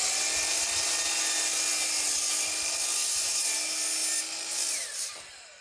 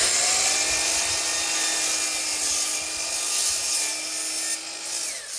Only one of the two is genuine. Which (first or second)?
second